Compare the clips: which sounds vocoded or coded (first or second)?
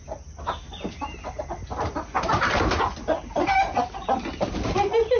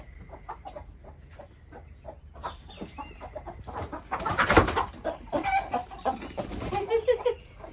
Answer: second